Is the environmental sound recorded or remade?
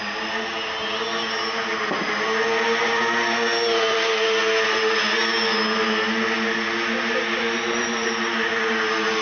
recorded